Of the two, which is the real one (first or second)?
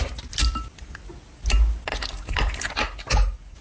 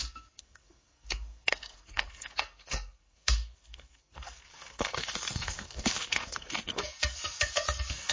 first